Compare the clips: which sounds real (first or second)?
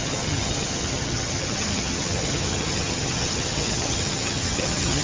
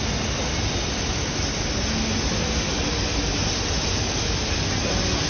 second